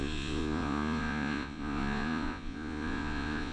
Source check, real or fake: fake